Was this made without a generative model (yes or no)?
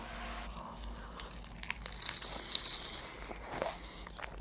yes